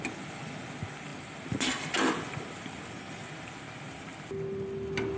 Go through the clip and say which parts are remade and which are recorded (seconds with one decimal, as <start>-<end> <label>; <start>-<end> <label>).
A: 0.0-5.2 recorded